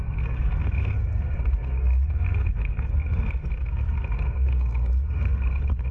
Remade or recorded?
remade